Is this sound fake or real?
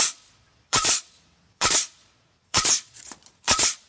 fake